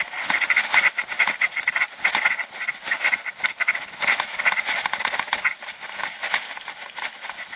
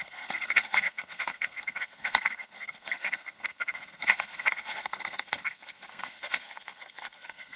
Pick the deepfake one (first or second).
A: second